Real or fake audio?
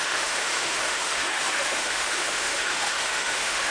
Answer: fake